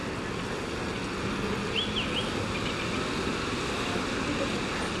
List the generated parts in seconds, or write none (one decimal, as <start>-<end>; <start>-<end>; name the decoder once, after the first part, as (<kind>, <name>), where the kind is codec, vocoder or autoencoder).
none